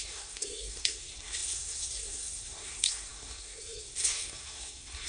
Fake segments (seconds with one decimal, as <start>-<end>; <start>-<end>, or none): 0.0-5.1